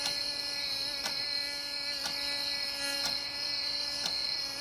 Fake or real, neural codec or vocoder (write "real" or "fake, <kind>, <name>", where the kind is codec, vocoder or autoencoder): real